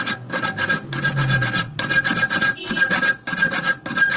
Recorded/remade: recorded